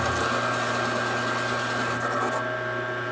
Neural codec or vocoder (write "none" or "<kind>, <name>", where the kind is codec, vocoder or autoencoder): none